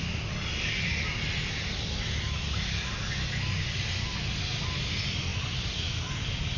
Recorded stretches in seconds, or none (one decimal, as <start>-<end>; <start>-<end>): 0.0-5.3; 6.1-6.6